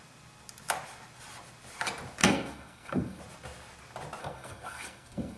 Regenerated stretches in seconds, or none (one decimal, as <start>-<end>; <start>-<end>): 2.2-3.2; 4.2-5.4